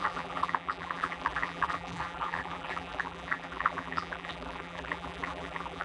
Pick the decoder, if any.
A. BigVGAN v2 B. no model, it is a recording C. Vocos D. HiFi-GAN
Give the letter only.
A